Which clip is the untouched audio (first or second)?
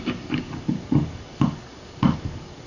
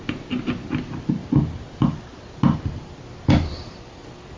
second